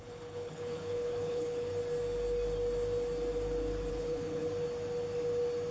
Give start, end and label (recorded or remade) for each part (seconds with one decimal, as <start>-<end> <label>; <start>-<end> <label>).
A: 0.0-1.7 remade; 1.7-3.9 recorded; 3.9-4.4 remade; 4.4-5.7 recorded